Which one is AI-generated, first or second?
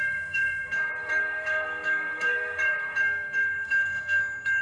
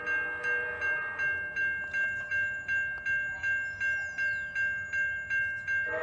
first